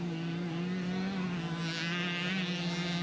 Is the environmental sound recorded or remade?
recorded